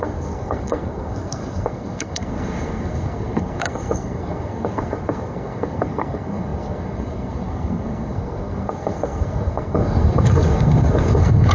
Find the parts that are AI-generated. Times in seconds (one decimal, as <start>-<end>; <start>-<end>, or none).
0.0-11.5

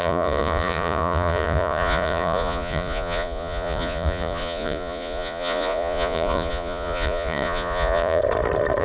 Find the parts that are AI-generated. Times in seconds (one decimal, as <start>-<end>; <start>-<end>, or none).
0.0-8.2